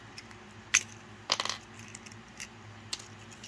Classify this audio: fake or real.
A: real